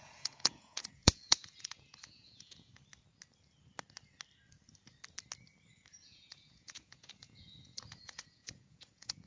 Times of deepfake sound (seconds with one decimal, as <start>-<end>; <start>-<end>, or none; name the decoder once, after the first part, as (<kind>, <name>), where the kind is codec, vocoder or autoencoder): 0.0-2.7 (vocoder, Vocos); 6.0-9.3